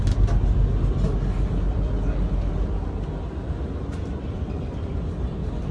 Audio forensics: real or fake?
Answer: real